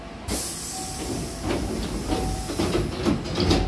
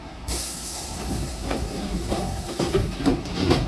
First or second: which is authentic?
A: first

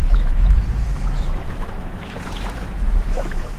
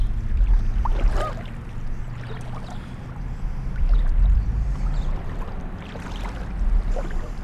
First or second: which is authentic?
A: second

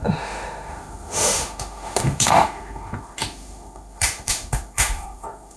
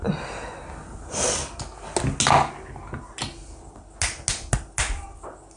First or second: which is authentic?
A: second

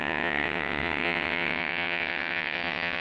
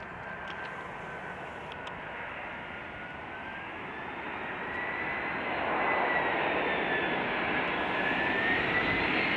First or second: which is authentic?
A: second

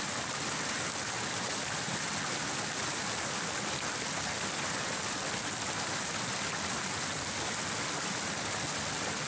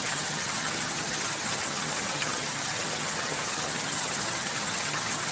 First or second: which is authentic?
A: first